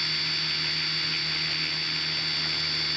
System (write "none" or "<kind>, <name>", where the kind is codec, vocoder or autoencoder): none